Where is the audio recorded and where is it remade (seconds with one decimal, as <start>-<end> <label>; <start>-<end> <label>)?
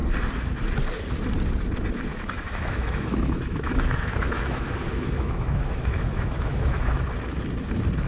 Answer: 0.0-2.1 recorded; 2.1-7.0 remade; 7.0-8.1 recorded